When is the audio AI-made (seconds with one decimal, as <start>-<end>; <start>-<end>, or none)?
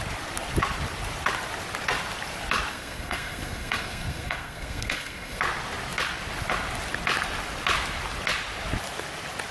2.7-5.4